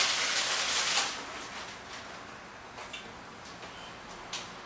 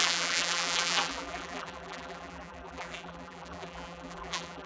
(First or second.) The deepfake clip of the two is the second